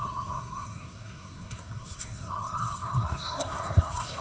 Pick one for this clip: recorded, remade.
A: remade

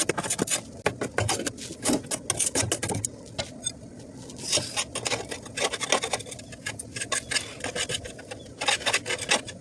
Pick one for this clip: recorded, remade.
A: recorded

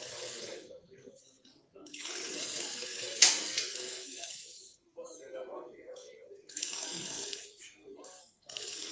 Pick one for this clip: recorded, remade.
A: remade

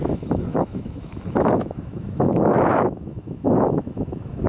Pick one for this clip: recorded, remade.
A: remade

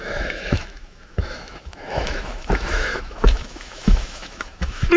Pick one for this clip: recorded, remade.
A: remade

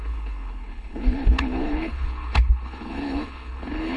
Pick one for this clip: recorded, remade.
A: remade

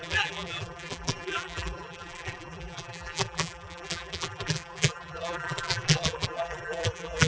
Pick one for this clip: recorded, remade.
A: remade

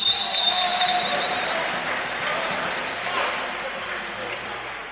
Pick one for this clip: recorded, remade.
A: remade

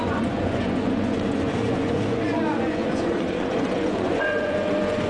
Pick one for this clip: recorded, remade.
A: remade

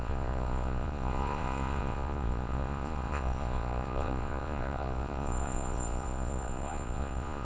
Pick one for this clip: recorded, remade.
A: remade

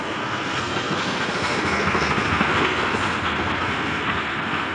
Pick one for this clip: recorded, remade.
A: remade